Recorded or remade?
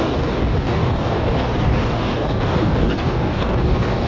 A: remade